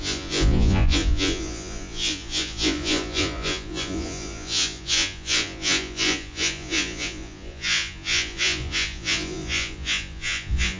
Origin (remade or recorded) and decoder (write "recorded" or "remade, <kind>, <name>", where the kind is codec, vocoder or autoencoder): remade, vocoder, Vocos